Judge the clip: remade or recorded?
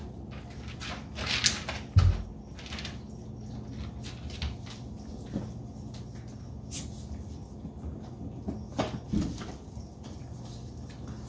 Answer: recorded